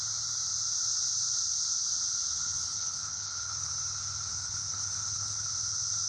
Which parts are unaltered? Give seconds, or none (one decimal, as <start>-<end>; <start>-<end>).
0.0-2.4; 3.7-4.3; 5.5-6.1

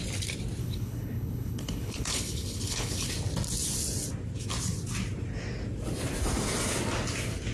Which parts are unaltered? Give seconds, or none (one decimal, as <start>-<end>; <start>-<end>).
0.0-0.6; 3.1-7.5

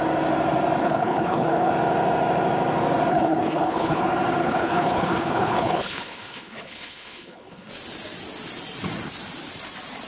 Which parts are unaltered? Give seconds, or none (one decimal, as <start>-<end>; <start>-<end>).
0.0-0.8; 1.7-3.1; 4.0-4.4; 7.7-10.1